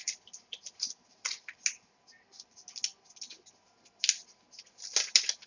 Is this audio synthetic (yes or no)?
no